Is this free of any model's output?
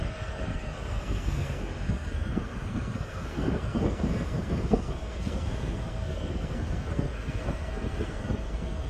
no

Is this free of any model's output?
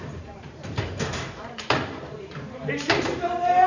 no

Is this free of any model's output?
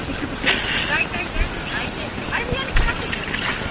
yes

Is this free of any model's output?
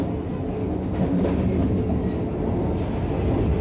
yes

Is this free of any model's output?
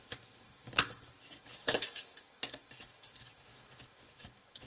no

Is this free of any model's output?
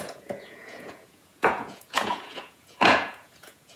no